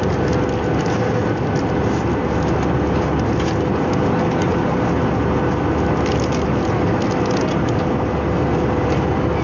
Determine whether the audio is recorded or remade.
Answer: recorded